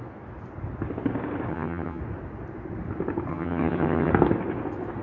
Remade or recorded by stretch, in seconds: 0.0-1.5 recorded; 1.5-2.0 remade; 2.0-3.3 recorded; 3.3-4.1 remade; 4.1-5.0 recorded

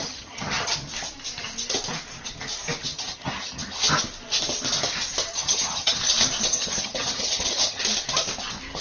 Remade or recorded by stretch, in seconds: 0.0-0.7 remade; 0.7-2.9 recorded; 2.9-4.0 remade; 4.0-5.3 recorded; 5.3-6.0 remade; 6.0-6.5 recorded; 6.5-7.8 remade; 7.8-8.8 recorded